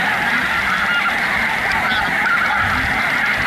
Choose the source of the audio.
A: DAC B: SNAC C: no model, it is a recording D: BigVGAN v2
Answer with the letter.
C